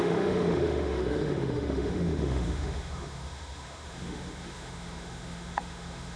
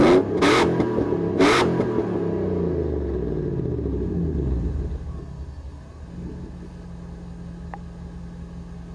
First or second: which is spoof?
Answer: first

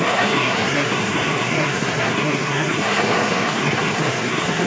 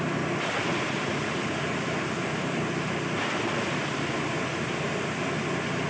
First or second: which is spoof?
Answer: first